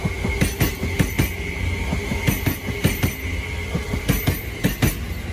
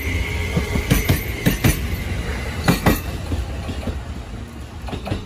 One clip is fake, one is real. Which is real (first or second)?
first